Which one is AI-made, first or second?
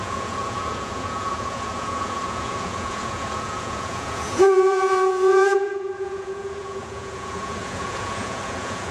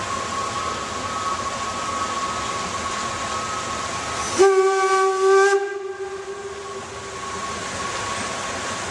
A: first